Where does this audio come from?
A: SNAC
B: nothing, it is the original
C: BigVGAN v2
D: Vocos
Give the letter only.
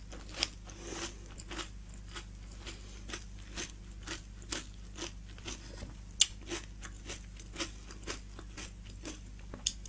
B